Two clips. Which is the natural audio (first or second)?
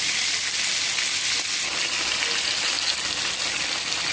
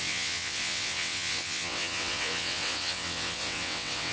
first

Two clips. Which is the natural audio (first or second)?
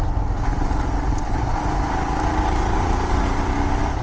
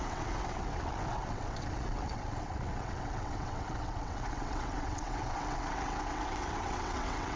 first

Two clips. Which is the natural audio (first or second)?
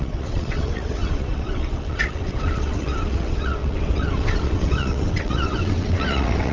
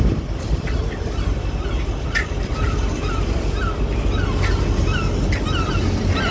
second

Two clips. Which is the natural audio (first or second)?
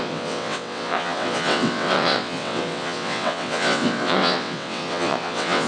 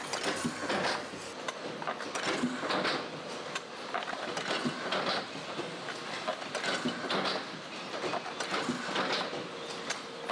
second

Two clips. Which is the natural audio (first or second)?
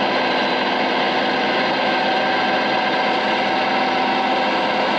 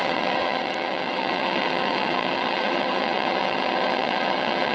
first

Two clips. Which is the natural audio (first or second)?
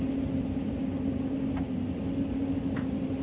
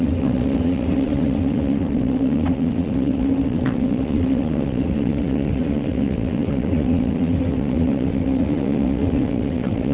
first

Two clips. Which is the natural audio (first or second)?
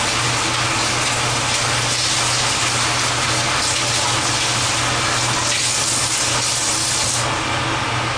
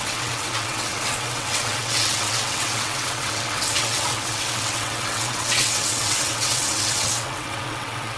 first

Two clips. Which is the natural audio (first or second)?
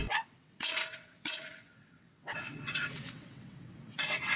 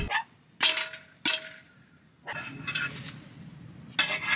second